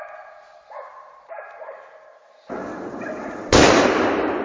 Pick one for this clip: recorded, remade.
recorded